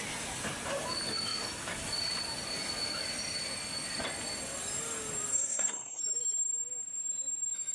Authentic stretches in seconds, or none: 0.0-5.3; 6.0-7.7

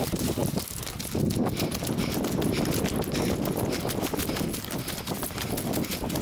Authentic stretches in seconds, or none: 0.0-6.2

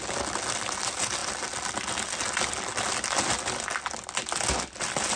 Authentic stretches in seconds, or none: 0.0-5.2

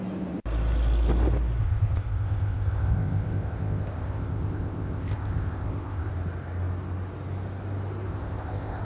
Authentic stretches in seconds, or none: 0.0-1.6; 6.1-8.1

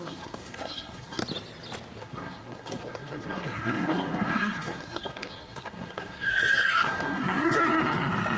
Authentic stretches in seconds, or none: 1.2-2.0; 7.6-8.4